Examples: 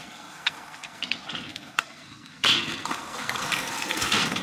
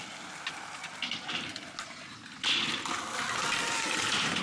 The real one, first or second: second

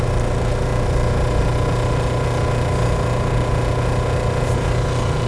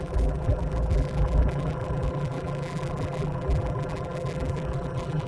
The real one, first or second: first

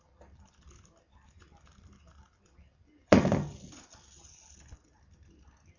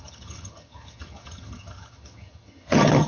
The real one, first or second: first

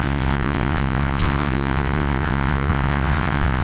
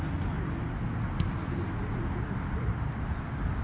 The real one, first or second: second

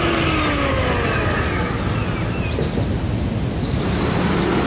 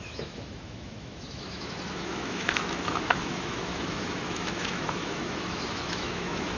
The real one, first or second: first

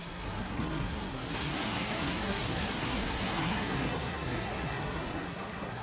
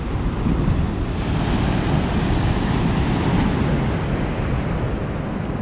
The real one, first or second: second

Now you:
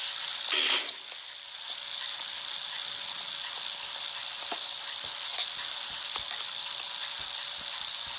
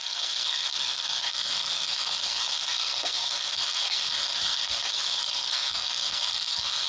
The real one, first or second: first